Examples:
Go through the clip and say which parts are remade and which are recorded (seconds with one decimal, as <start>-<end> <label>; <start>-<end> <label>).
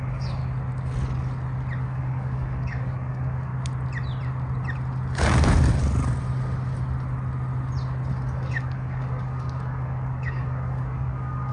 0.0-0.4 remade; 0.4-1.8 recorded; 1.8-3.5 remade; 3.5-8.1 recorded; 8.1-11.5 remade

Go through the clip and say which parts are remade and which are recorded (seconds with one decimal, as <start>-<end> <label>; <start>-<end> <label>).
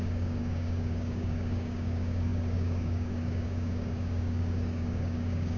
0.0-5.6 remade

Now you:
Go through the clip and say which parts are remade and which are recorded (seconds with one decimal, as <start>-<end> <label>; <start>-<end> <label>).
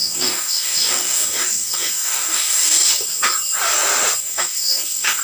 0.0-3.2 remade; 3.2-4.2 recorded; 4.2-5.2 remade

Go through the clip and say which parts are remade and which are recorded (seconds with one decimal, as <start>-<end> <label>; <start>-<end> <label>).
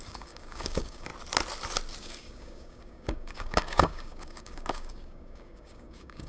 0.0-1.1 remade; 1.1-2.0 recorded; 2.0-6.3 remade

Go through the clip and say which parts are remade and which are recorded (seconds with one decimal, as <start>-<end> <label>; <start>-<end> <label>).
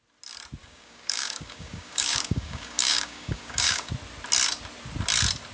0.0-0.6 recorded; 0.6-3.9 remade; 3.9-5.5 recorded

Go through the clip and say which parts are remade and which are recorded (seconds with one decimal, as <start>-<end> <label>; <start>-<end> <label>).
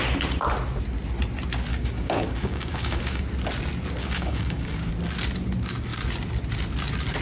0.0-1.7 recorded; 1.7-3.2 remade; 3.2-4.0 recorded; 4.0-4.9 remade; 4.9-7.2 recorded